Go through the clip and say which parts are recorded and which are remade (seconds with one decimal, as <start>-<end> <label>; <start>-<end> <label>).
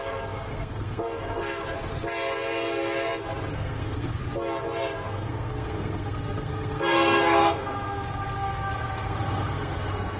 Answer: 0.0-1.4 remade; 1.4-3.5 recorded; 3.5-4.2 remade; 4.2-5.1 recorded; 5.1-10.2 remade